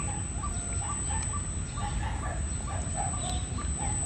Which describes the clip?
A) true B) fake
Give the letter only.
A